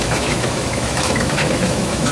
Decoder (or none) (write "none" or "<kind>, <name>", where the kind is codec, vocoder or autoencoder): autoencoder, DAC-VAE